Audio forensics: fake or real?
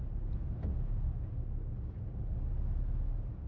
real